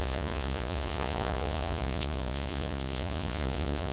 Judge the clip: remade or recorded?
remade